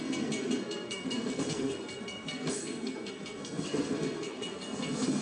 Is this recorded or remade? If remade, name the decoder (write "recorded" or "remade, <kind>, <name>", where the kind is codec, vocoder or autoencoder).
remade, codec, SNAC